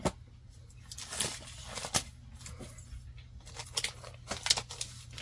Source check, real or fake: real